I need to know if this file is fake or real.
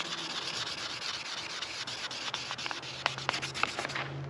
real